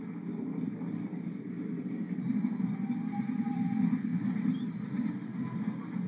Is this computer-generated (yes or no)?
no